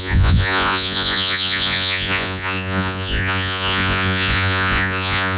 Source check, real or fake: fake